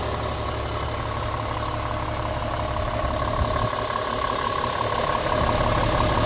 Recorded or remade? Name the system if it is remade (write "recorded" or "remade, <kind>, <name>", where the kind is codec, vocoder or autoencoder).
recorded